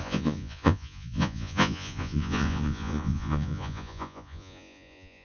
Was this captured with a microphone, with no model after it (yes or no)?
no